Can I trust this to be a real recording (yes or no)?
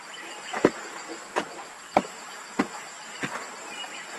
yes